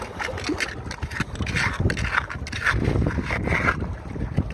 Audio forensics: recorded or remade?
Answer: recorded